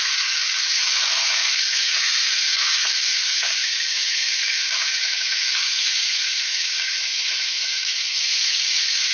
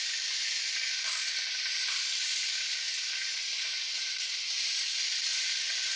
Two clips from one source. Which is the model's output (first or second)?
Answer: first